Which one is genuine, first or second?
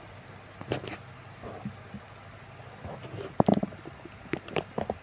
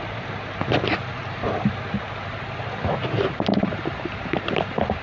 first